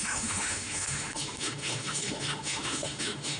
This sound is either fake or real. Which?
fake